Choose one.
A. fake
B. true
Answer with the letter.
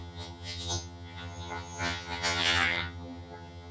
A